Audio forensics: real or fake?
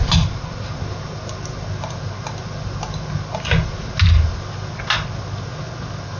real